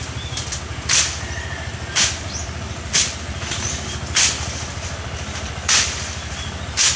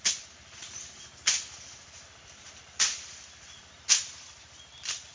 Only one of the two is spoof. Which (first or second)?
second